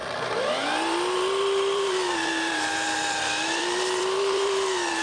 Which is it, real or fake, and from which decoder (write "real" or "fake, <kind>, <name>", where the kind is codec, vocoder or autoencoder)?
fake, vocoder, BigVGAN v2